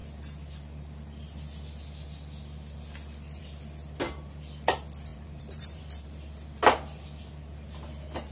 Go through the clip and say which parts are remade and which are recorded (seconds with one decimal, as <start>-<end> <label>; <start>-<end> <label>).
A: 0.0-5.1 recorded; 5.1-5.8 remade; 5.8-8.3 recorded